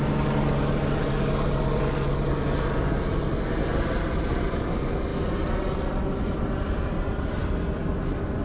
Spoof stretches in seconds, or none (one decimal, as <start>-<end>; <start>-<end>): none